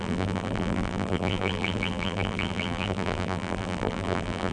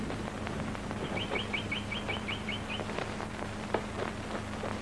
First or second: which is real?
second